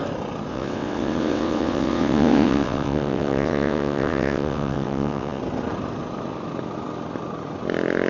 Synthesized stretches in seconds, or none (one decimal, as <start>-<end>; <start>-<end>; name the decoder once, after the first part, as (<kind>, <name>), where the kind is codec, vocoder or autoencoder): 0.5-5.4 (vocoder, WaveNeXt)